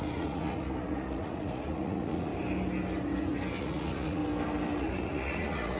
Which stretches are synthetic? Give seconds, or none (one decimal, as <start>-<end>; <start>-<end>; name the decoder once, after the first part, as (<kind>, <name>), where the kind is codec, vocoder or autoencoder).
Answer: 0.0-2.3 (vocoder, Vocos); 3.6-4.2; 4.8-5.8